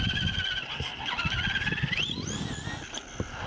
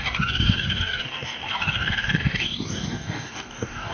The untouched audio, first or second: first